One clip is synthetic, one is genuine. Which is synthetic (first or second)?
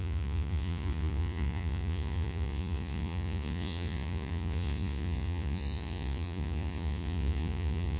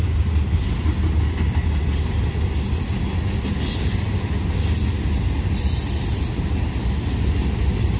first